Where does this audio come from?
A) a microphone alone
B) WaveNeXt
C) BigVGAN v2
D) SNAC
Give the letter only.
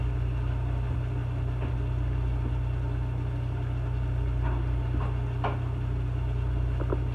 A